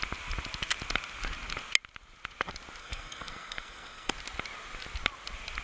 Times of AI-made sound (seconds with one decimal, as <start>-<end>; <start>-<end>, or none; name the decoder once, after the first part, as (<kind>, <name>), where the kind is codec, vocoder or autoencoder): 2.8-4.1 (codec, SNAC)